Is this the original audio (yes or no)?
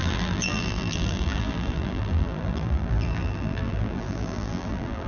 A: no